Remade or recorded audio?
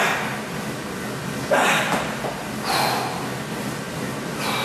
recorded